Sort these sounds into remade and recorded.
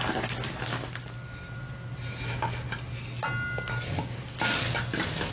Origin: recorded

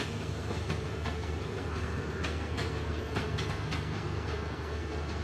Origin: remade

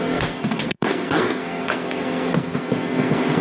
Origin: remade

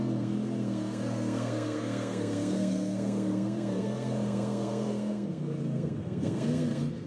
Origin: remade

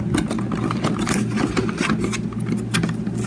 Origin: recorded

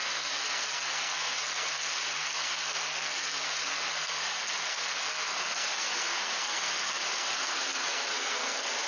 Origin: remade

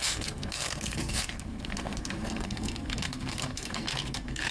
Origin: remade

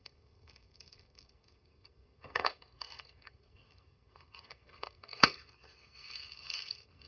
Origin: remade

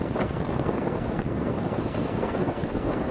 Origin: remade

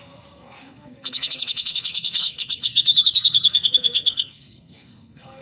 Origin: remade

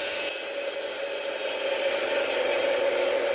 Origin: recorded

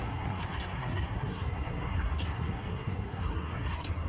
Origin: remade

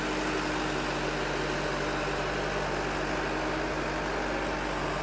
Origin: recorded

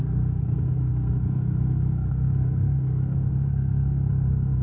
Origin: remade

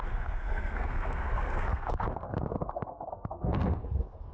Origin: remade